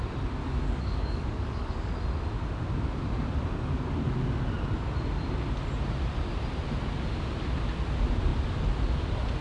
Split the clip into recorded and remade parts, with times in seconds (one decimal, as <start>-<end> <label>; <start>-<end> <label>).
0.0-0.4 recorded; 0.4-1.9 remade; 1.9-9.4 recorded